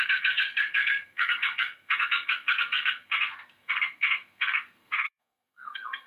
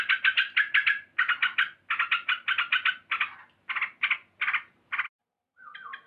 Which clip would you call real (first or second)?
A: second